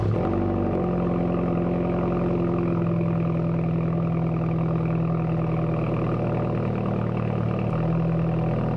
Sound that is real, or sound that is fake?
real